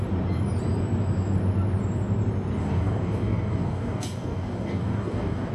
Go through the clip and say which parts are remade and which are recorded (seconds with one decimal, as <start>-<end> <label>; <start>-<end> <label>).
0.0-2.6 recorded; 2.6-5.5 remade